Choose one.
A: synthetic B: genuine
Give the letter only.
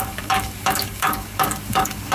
A